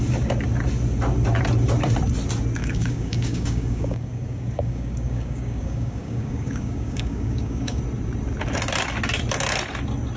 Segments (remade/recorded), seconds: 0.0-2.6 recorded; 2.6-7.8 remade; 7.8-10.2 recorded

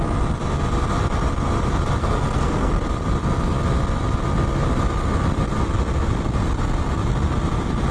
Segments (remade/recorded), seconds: 0.0-2.0 recorded; 2.0-2.7 remade; 2.7-7.9 recorded

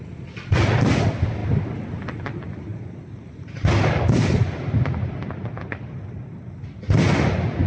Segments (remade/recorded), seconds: 0.0-7.7 recorded

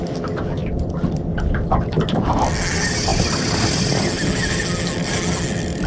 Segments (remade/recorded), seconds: 0.0-5.9 recorded

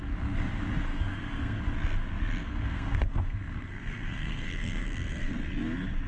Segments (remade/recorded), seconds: 0.0-0.9 recorded; 0.9-1.6 remade; 1.6-2.4 recorded; 2.4-5.3 remade; 5.3-6.1 recorded

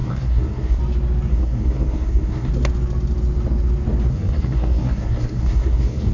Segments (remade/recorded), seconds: 0.0-0.8 remade; 0.8-1.3 recorded; 1.3-2.5 remade; 2.5-4.1 recorded; 4.1-6.1 remade

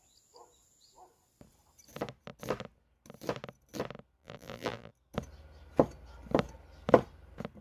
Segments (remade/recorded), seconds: 0.0-4.2 recorded; 4.2-4.9 remade; 4.9-7.6 recorded